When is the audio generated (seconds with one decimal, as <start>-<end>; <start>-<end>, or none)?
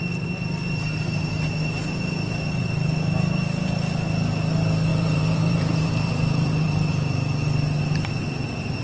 4.9-6.9